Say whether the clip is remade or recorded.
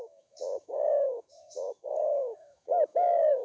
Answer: remade